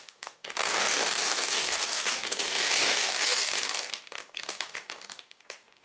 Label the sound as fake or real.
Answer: fake